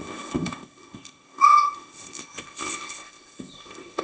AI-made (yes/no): yes